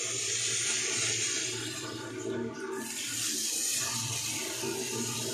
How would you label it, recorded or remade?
recorded